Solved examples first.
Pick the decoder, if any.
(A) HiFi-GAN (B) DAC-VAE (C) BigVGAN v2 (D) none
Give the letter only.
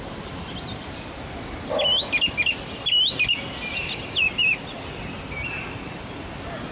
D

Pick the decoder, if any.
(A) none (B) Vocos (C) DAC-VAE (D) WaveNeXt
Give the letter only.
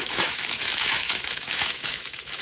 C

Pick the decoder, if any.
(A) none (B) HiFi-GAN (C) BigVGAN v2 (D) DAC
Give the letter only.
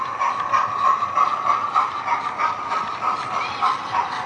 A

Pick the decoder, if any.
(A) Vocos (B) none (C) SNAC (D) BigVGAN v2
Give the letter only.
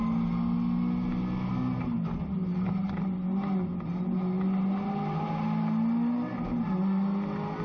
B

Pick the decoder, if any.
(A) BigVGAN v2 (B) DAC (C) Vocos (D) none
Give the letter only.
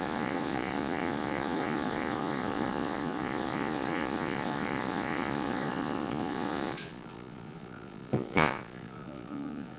C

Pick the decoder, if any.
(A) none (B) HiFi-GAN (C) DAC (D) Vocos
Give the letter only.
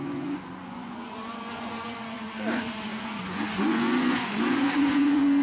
D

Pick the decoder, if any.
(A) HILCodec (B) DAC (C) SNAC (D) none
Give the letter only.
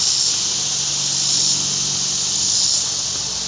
D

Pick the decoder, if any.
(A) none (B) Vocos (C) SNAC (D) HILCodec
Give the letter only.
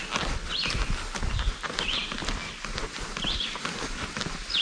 A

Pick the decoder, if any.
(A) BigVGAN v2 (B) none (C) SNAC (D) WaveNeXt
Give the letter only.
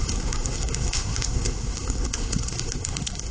C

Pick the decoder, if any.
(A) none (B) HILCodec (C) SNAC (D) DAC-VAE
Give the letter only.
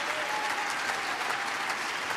A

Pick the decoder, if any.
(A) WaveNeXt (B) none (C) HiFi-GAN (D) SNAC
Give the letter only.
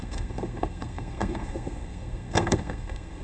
D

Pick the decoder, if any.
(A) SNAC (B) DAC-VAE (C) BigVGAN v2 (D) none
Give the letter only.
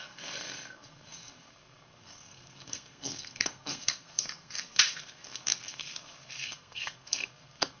A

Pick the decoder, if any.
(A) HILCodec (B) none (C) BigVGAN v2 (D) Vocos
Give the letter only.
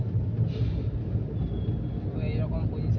B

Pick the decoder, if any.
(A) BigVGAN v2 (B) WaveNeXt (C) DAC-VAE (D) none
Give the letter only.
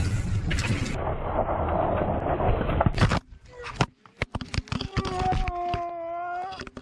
D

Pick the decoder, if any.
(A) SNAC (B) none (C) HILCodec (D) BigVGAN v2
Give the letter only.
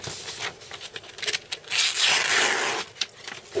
B